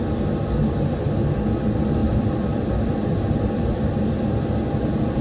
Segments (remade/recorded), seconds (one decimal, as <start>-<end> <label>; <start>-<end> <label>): 0.0-2.0 recorded; 2.0-5.2 remade